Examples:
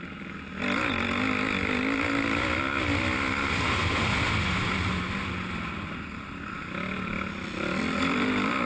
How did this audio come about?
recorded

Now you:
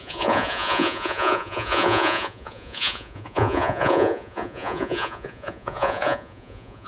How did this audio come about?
remade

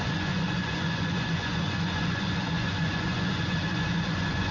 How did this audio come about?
remade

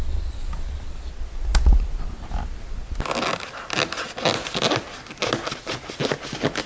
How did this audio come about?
recorded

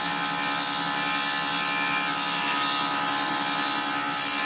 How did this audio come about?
recorded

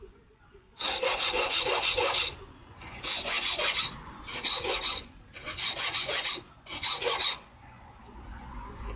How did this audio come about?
remade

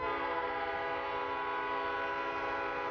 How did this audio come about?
recorded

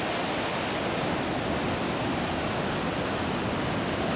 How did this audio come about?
recorded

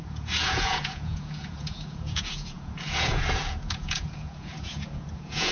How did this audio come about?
remade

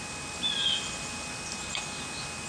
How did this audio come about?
recorded